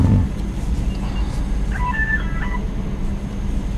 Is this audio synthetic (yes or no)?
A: no